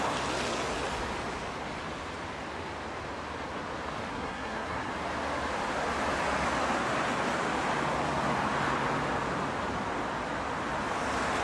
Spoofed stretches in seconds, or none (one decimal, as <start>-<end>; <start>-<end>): 4.1-4.9